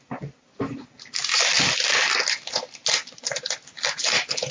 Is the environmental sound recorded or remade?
recorded